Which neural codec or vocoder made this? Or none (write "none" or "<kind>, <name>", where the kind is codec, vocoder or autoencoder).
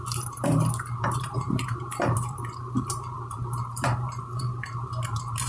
vocoder, BigVGAN v2